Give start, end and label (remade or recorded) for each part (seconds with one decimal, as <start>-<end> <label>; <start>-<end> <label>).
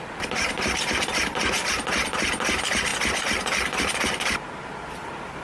0.0-5.4 recorded